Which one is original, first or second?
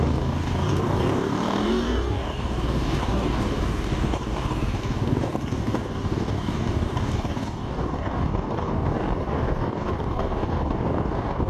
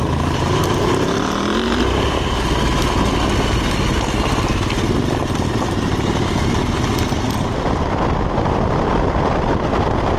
second